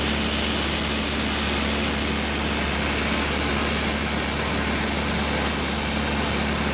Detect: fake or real real